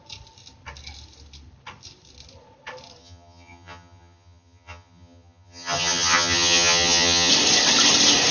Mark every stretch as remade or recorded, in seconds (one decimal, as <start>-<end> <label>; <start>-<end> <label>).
0.0-3.0 recorded; 3.0-7.3 remade; 7.3-8.3 recorded